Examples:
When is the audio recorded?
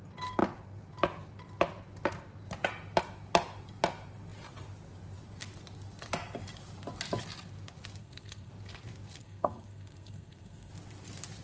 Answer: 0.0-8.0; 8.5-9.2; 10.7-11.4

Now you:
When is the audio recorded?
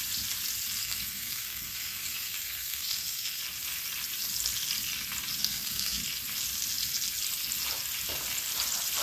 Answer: 0.0-0.8; 3.4-5.4; 6.0-9.0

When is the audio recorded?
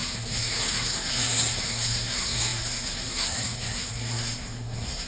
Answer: none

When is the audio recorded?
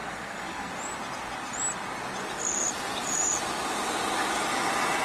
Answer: 0.7-5.0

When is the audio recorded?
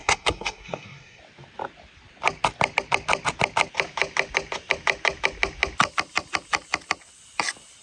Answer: 1.2-7.8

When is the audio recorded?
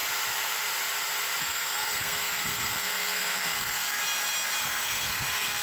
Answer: 0.0-1.4; 4.0-4.6